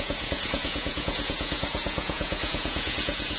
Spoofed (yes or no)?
yes